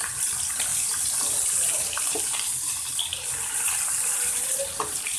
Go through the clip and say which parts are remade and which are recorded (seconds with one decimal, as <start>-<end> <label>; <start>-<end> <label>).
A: 0.0-0.7 remade; 0.7-2.2 recorded; 2.2-3.1 remade; 3.1-4.7 recorded; 4.7-5.2 remade